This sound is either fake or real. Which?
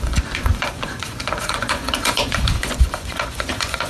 fake